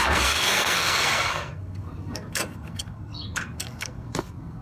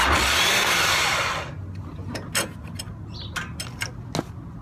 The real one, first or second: second